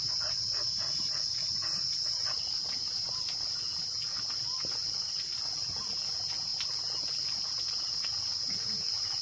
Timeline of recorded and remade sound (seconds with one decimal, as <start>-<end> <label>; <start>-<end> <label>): 0.0-2.2 recorded; 2.2-3.1 remade; 3.1-9.2 recorded